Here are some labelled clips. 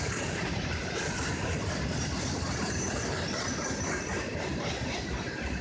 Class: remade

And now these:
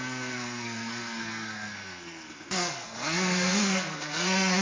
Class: remade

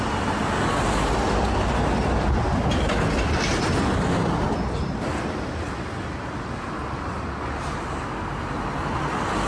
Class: recorded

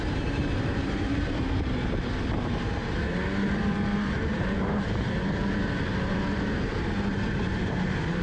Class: remade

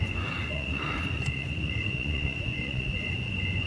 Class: remade